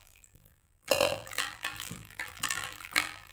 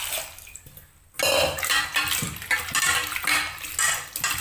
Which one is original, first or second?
second